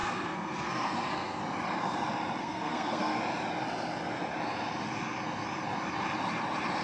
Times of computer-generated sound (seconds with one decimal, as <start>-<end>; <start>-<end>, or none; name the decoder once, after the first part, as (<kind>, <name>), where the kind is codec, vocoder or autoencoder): 0.0-1.4 (codec, SNAC); 2.4-3.2